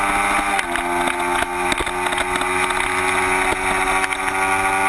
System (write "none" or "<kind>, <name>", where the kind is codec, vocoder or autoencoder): none